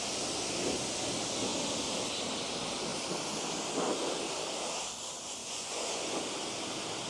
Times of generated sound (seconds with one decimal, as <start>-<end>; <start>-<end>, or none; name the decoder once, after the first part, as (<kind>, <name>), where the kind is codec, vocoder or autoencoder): 5.4-6.2 (vocoder, Vocos)